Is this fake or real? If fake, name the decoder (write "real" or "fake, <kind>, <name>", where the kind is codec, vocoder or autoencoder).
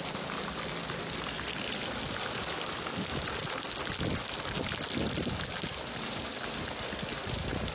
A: real